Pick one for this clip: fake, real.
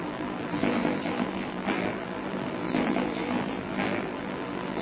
fake